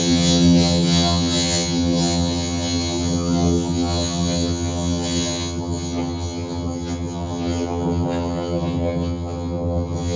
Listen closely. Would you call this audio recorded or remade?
remade